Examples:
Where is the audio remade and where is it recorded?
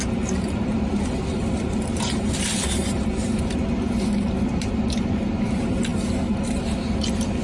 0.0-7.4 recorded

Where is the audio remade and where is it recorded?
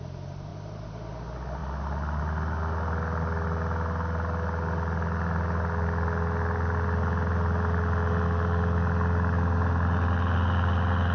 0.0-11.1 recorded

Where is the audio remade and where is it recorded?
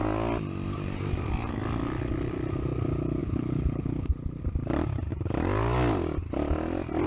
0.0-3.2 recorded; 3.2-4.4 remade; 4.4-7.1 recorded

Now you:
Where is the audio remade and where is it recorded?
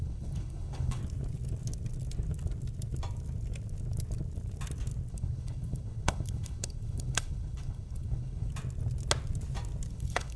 0.0-1.0 remade; 1.0-5.1 recorded; 5.1-8.5 remade; 8.5-9.9 recorded; 9.9-10.4 remade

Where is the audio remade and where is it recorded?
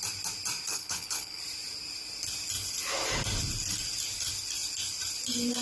0.0-0.7 recorded; 0.7-1.4 remade; 1.4-5.6 recorded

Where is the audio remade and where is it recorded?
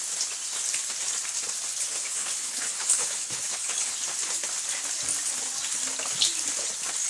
0.0-1.7 recorded; 1.7-3.9 remade; 3.9-7.1 recorded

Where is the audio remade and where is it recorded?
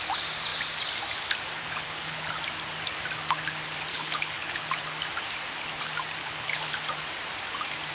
0.0-1.6 recorded; 1.6-2.4 remade; 2.4-3.9 recorded; 3.9-4.8 remade; 4.8-6.2 recorded; 6.2-6.7 remade; 6.7-7.9 recorded